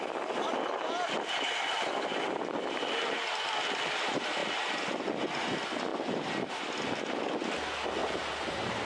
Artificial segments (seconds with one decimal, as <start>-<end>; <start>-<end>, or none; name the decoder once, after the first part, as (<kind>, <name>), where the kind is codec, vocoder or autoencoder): 5.9-6.5 (vocoder, BigVGAN v2); 8.0-8.8